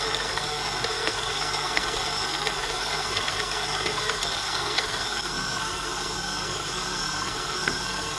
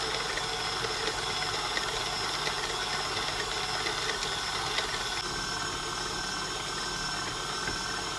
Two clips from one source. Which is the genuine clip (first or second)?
second